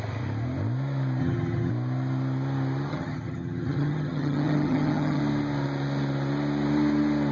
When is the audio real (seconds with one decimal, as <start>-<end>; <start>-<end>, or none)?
0.0-1.2; 1.7-2.9; 5.2-7.3